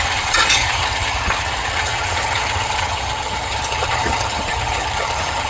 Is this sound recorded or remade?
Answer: remade